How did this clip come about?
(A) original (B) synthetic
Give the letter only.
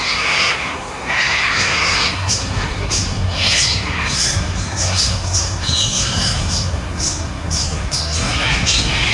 B